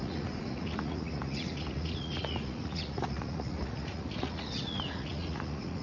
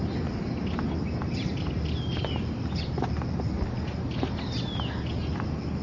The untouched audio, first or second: second